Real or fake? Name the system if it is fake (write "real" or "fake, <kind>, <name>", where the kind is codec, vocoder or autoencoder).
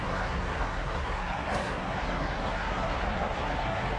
fake, codec, SNAC